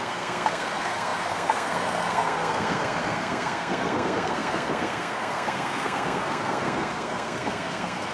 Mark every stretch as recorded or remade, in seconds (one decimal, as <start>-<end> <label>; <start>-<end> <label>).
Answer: 0.0-8.1 remade